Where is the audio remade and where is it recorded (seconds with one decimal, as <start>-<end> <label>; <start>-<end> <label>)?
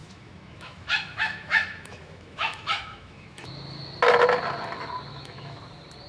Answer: 0.0-3.5 remade; 3.5-5.1 recorded; 5.1-5.6 remade; 5.6-6.1 recorded